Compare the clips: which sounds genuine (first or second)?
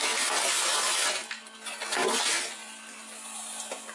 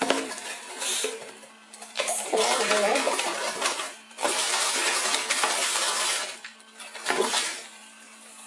first